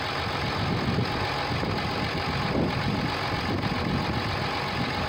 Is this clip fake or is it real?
real